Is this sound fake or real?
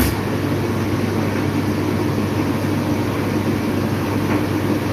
real